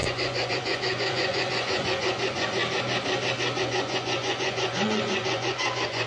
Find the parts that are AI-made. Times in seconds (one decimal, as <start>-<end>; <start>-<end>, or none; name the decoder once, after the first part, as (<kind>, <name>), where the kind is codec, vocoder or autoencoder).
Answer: 0.0-2.6 (vocoder, Vocos); 3.6-6.1

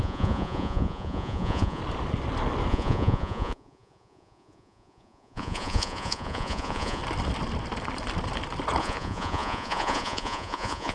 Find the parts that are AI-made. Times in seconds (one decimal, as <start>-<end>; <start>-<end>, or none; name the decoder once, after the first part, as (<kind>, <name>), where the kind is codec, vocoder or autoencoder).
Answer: 0.0-1.8 (vocoder, Vocos); 2.7-7.0; 8.8-10.9